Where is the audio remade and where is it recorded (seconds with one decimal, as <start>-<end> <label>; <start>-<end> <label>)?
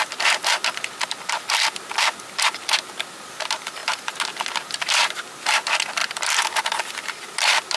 0.0-7.8 recorded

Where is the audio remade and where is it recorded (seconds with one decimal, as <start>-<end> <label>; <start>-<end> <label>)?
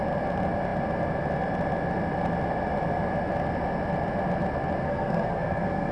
0.0-4.8 recorded; 4.8-5.9 remade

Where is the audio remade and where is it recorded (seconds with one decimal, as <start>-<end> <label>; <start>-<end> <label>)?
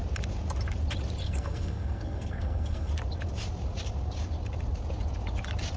0.0-1.2 recorded; 1.2-2.9 remade; 2.9-5.8 recorded